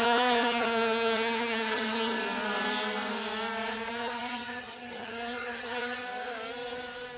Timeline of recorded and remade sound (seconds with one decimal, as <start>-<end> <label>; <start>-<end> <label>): 0.0-2.2 remade; 2.2-3.9 recorded; 3.9-6.0 remade; 6.0-7.2 recorded